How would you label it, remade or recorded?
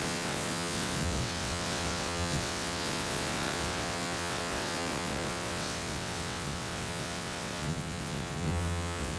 remade